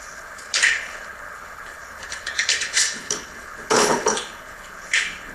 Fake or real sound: fake